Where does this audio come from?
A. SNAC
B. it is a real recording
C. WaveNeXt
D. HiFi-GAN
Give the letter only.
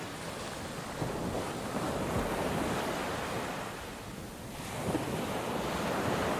B